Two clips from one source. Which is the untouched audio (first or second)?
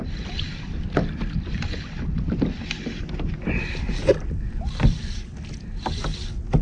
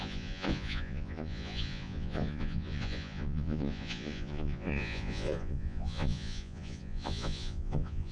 first